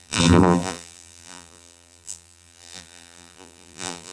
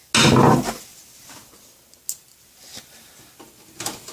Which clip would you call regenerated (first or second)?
first